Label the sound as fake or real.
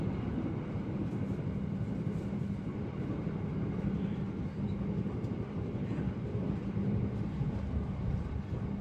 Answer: fake